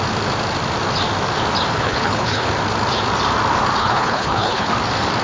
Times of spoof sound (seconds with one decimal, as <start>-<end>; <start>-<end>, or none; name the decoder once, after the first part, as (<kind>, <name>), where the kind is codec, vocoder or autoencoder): 1.7-2.5 (codec, HILCodec); 3.8-4.7